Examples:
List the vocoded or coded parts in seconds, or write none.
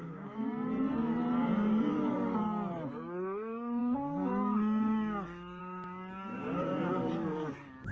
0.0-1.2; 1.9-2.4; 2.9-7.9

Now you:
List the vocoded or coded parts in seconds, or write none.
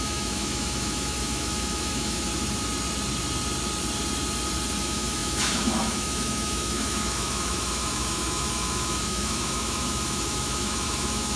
0.0-2.3; 4.8-11.4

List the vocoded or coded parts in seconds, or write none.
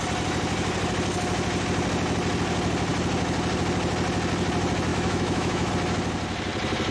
4.9-5.7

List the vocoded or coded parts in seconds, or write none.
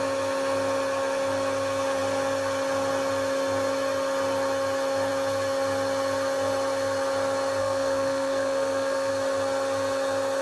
7.6-9.1